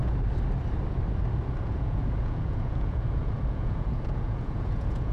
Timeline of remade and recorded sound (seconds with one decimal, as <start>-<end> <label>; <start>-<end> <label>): 0.0-1.6 recorded; 1.6-5.1 remade